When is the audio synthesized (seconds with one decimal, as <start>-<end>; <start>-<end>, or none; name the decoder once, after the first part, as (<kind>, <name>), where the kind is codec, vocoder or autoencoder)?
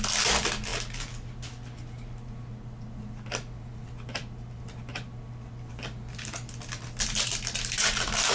none